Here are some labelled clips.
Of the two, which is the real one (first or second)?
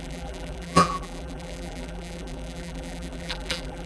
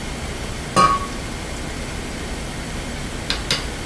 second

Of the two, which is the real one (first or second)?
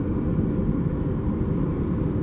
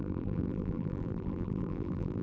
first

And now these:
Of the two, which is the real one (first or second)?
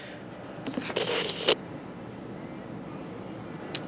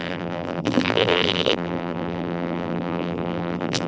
first